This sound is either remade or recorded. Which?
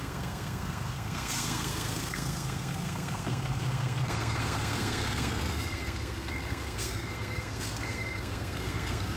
remade